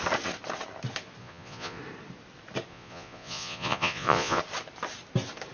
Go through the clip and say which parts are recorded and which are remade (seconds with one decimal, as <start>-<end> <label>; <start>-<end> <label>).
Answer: 0.0-1.2 recorded; 1.2-1.8 remade; 1.8-2.7 recorded; 2.7-4.4 remade; 4.4-5.5 recorded